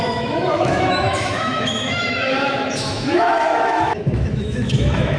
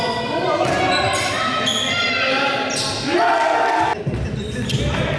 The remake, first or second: first